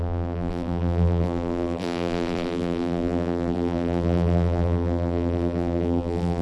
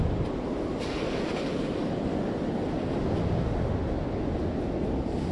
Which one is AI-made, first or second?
first